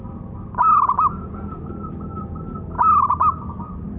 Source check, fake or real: real